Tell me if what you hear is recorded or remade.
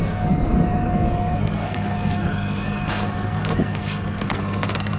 remade